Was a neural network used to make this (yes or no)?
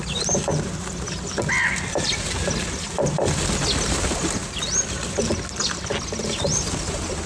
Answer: no